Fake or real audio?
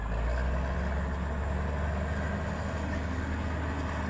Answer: real